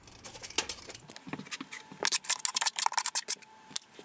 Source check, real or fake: real